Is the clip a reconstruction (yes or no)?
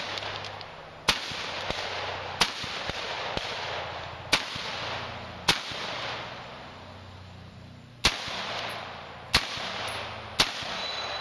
no